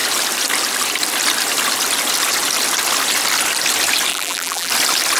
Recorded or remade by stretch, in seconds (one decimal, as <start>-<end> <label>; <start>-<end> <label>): 0.0-4.1 recorded; 4.1-4.7 remade; 4.7-5.2 recorded